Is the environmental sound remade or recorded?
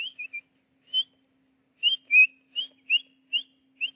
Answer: recorded